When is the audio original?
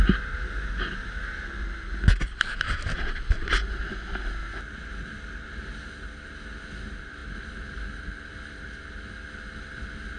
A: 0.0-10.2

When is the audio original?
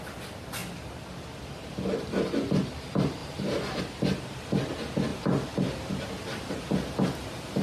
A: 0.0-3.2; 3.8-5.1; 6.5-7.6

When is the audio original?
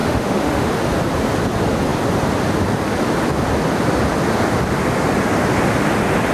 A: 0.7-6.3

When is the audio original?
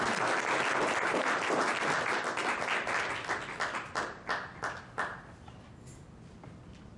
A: 0.0-7.0